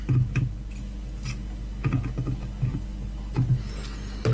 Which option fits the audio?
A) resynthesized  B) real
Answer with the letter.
B